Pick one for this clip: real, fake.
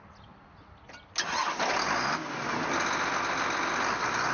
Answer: real